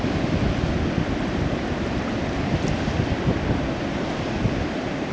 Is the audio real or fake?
real